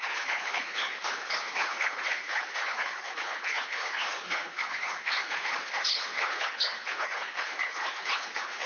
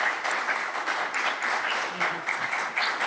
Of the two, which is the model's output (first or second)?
first